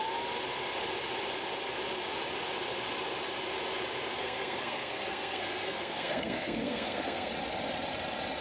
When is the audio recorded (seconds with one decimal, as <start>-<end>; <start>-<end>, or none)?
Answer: 0.0-4.2; 7.3-8.4